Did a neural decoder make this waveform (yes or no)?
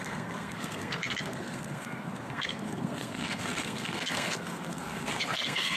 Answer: yes